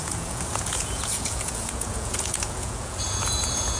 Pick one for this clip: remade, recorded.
remade